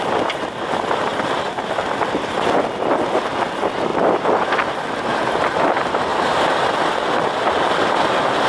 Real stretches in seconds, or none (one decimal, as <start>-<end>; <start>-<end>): 0.0-8.5